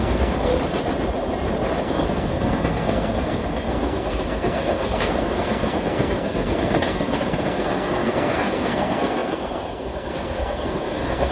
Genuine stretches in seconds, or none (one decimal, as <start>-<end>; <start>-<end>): 0.5-1.8